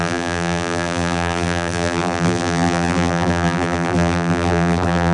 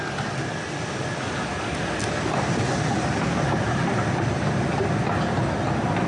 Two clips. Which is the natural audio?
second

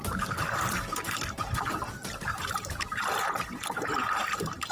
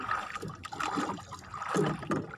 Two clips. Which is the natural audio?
second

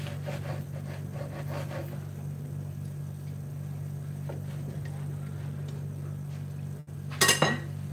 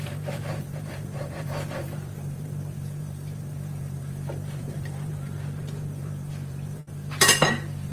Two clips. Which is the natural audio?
first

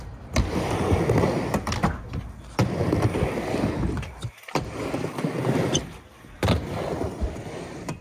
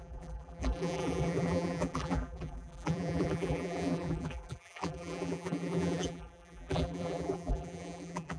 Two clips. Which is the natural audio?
first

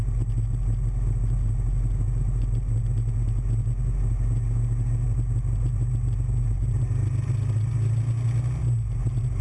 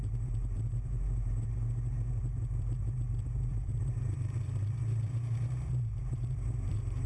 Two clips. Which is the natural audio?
first